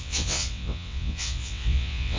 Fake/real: fake